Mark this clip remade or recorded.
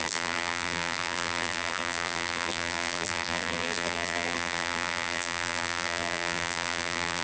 remade